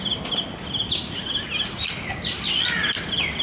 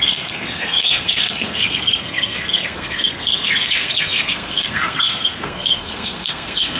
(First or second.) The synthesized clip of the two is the second